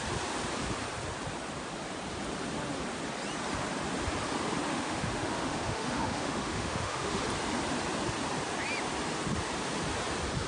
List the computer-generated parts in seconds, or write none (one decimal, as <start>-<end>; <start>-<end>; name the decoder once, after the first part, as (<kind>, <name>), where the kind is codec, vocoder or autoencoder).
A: 4.7-7.2 (autoencoder, DAC-VAE)